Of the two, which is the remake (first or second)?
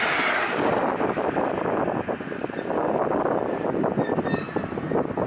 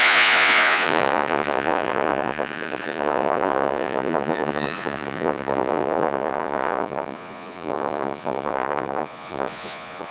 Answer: second